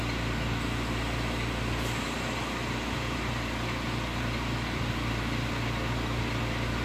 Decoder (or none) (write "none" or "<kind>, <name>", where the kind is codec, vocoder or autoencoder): none